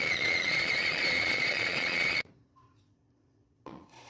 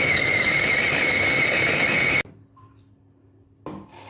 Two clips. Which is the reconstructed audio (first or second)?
first